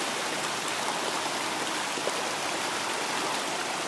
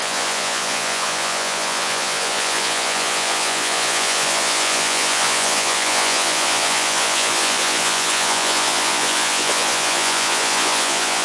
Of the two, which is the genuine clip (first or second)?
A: first